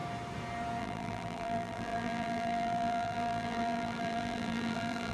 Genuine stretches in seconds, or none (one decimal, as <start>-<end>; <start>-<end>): 0.0-0.8